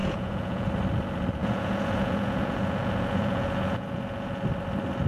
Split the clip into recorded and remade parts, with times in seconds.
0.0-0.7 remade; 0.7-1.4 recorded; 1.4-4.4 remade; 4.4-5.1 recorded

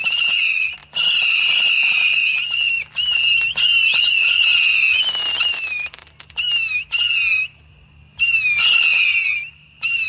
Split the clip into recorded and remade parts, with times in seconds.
0.0-10.1 recorded

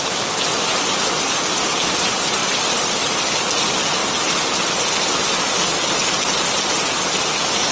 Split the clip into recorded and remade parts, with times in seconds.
0.0-7.7 recorded

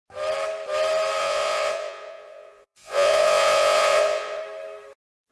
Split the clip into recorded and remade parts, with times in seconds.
0.0-1.2 recorded; 1.2-4.4 remade; 4.4-5.3 recorded